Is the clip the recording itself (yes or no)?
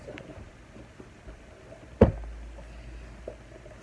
yes